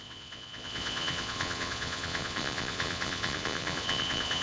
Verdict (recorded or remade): remade